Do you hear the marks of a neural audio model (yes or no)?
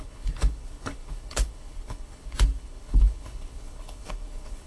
yes